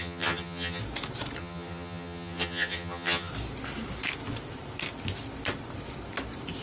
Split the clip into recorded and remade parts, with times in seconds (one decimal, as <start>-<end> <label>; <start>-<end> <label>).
0.0-0.8 remade; 0.8-1.4 recorded; 1.4-3.3 remade; 3.3-6.6 recorded